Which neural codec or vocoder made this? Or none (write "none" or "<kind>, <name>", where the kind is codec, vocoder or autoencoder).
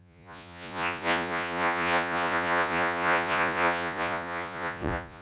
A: vocoder, Vocos